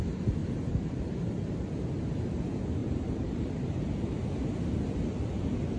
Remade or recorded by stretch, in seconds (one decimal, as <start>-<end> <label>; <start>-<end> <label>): 0.0-0.4 recorded; 0.4-1.3 remade; 1.3-2.8 recorded; 2.8-3.8 remade; 3.8-5.8 recorded